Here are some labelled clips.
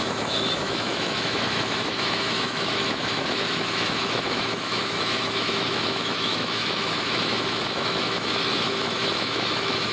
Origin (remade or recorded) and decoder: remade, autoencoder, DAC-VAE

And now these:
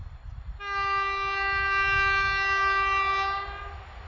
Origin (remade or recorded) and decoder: recorded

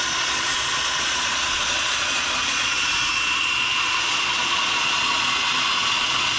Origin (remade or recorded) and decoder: remade, vocoder, Vocos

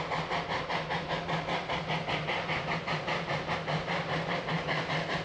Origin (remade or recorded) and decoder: recorded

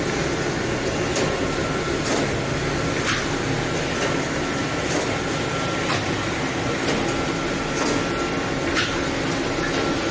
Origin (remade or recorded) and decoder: recorded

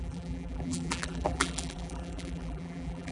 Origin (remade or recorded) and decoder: remade, vocoder, BigVGAN v2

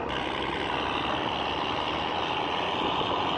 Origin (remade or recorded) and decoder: recorded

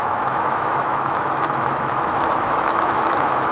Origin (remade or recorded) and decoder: remade, autoencoder, DAC-VAE